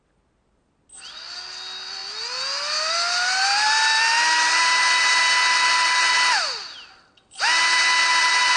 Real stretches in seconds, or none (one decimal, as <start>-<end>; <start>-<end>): 0.0-8.6